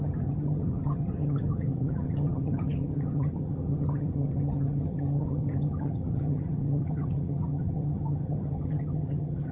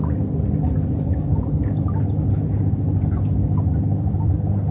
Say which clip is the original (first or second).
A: second